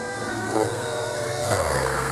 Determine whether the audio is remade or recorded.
remade